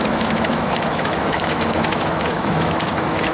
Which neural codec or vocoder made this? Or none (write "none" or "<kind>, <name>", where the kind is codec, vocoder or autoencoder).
autoencoder, DAC-VAE